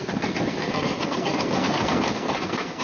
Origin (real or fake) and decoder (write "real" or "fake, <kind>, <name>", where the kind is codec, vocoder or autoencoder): fake, codec, SNAC